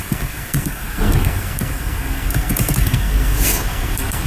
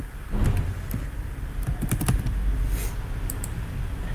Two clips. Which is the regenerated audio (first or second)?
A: first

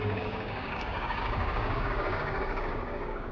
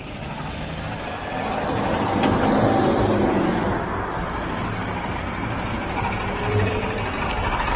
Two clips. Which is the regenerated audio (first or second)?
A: first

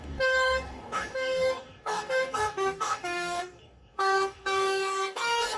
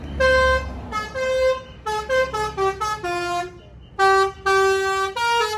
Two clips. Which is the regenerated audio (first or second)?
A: first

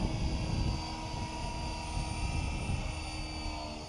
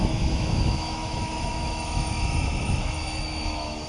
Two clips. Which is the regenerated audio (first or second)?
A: second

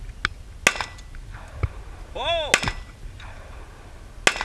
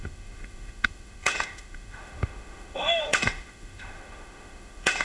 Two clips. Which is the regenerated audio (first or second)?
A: second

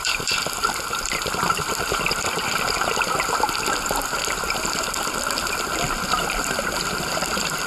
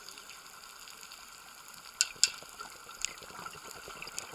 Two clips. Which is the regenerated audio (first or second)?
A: first